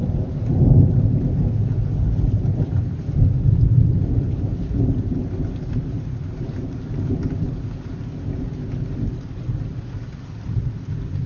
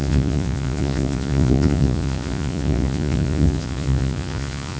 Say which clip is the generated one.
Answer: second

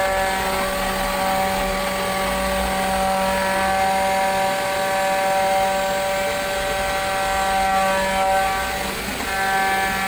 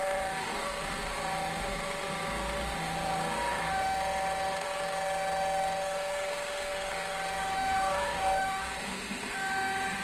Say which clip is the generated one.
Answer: second